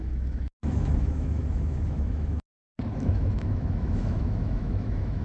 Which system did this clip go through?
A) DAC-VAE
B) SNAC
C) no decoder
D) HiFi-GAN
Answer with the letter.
A